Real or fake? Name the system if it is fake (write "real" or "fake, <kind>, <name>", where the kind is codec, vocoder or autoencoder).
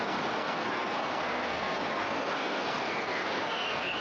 fake, codec, SNAC